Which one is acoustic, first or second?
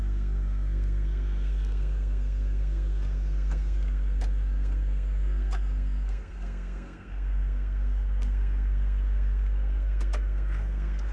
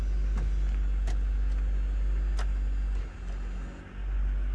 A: second